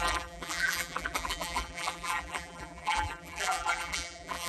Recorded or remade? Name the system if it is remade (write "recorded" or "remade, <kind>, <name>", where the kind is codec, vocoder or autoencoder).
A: remade, vocoder, BigVGAN v2